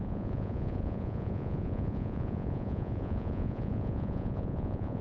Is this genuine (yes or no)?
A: no